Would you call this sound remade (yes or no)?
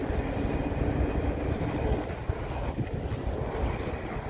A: no